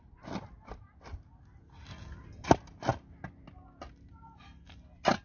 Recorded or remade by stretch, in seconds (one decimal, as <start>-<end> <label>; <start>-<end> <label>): 0.0-5.2 recorded